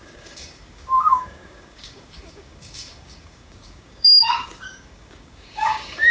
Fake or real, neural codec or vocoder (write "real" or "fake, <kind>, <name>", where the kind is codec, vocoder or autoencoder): fake, codec, DAC